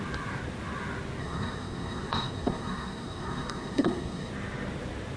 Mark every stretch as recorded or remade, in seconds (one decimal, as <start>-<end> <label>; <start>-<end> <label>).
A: 0.0-1.2 recorded; 1.2-4.3 remade; 4.3-5.2 recorded

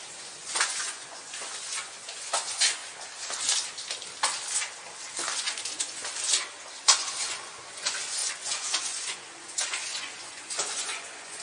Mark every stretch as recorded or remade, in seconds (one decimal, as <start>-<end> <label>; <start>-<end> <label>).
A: 0.0-2.8 remade; 2.8-5.4 recorded; 5.4-6.0 remade; 6.0-6.7 recorded; 6.7-11.4 remade

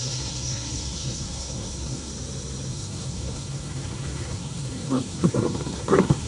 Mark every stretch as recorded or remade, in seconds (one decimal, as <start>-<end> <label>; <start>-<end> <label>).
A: 0.0-2.1 remade; 2.1-2.7 recorded; 2.7-6.3 remade

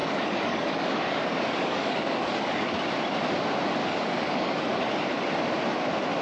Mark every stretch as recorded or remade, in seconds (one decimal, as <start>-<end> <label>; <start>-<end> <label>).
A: 0.0-2.7 remade; 2.7-3.8 recorded; 3.8-5.0 remade; 5.0-6.2 recorded

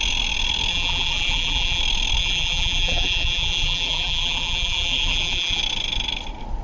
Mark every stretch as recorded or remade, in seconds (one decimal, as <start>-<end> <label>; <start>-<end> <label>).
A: 0.0-0.7 recorded; 0.7-1.8 remade; 1.8-2.2 recorded; 2.2-5.6 remade; 5.6-6.6 recorded

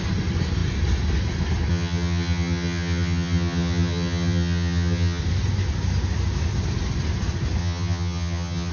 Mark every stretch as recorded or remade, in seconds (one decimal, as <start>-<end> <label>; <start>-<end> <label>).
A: 0.0-1.7 recorded; 1.7-5.2 remade; 5.2-7.6 recorded; 7.6-8.7 remade